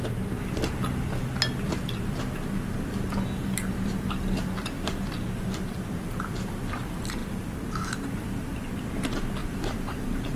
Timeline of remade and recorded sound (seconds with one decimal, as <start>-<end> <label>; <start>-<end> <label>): 0.0-3.4 recorded; 3.4-5.1 remade; 5.1-9.4 recorded; 9.4-10.4 remade